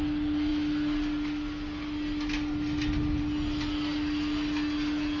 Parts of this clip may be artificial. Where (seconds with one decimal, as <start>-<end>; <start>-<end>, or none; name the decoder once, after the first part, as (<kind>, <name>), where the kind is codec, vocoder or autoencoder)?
none